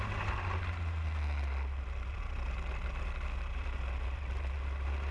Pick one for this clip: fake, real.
real